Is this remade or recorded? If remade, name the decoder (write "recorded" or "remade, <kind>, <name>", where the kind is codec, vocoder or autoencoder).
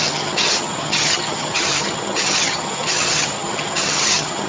remade, vocoder, HiFi-GAN